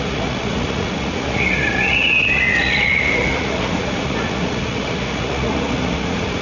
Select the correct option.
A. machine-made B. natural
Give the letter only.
A